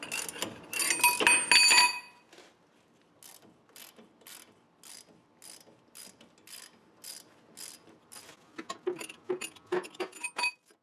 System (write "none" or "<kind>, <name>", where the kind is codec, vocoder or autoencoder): none